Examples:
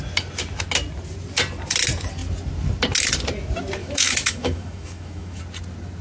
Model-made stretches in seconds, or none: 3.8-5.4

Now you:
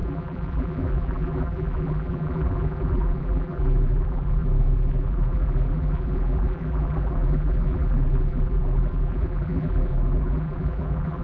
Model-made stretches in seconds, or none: 0.0-11.2

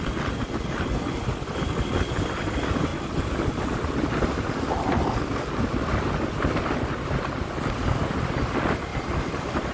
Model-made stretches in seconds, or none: none

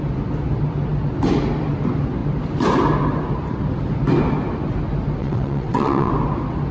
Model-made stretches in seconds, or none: 5.2-6.1

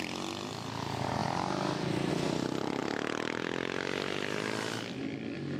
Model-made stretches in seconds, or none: none